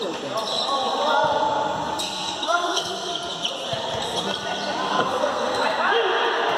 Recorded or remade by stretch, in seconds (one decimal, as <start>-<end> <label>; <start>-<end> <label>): 0.0-2.0 recorded; 2.0-3.1 remade; 3.1-4.9 recorded; 4.9-5.6 remade; 5.6-6.6 recorded